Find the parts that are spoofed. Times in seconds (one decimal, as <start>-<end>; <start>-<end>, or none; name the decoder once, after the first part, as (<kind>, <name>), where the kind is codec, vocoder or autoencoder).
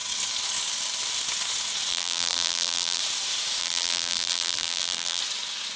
1.9-3.0 (vocoder, BigVGAN v2); 3.6-5.2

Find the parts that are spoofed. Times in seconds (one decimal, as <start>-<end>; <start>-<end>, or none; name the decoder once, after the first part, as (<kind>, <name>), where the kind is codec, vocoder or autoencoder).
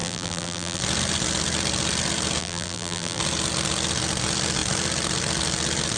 0.0-0.8 (vocoder, BigVGAN v2); 2.4-3.2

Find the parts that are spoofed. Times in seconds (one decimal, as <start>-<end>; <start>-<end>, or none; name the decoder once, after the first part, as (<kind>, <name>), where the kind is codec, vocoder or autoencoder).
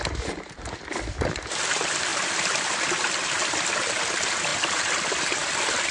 none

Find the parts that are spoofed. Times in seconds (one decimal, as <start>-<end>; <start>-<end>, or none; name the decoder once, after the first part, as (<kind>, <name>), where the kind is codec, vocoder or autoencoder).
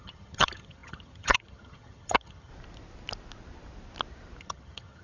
0.0-2.5 (vocoder, HiFi-GAN); 4.4-5.0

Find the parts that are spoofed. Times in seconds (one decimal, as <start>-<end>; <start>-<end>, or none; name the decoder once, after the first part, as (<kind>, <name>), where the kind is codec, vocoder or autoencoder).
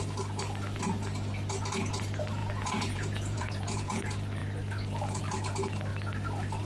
2.4-4.0 (vocoder, Vocos)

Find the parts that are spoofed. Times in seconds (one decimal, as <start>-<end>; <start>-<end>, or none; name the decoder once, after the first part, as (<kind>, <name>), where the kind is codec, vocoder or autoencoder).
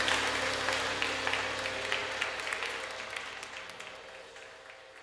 none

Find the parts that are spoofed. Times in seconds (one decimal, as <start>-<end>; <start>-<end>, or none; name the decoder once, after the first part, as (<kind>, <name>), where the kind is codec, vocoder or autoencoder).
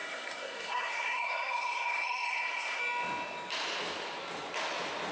0.0-2.8 (codec, SNAC)